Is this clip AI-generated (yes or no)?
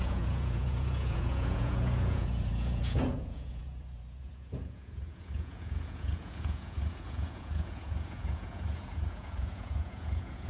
yes